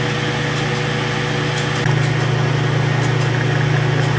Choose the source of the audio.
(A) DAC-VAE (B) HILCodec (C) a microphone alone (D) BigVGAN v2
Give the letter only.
C